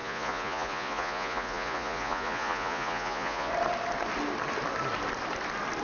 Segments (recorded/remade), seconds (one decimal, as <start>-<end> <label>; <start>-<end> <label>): 0.0-3.5 remade; 3.5-5.8 recorded